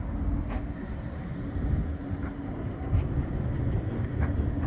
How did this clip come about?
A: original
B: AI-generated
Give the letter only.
A